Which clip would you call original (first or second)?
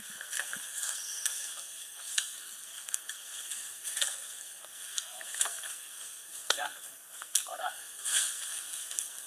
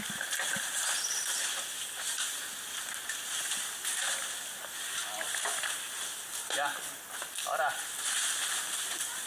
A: second